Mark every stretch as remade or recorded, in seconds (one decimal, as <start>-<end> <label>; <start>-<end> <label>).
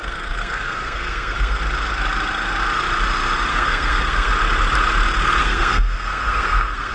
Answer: 0.0-1.6 remade; 1.6-3.5 recorded; 3.5-4.3 remade; 4.3-5.4 recorded; 5.4-6.9 remade